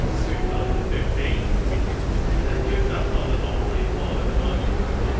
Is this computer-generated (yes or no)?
no